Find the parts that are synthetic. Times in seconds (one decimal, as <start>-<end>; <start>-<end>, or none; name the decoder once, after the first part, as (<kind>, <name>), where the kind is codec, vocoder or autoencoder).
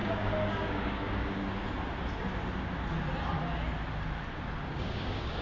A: 0.0-1.5 (codec, DAC); 4.7-5.4